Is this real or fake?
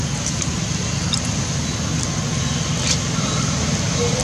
real